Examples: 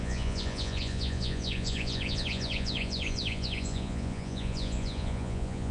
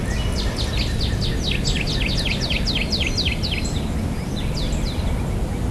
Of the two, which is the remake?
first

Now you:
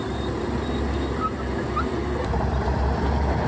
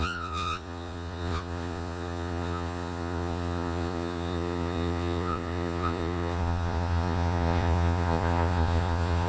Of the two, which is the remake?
second